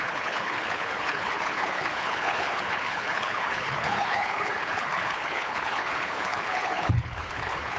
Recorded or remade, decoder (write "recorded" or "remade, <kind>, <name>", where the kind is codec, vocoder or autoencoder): remade, codec, HILCodec